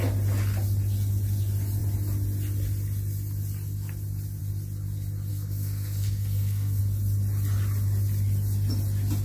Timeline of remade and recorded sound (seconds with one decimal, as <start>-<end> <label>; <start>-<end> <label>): 0.0-5.3 recorded; 5.3-6.8 remade; 6.8-9.2 recorded